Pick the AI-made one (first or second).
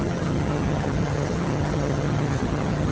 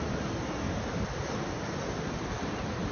first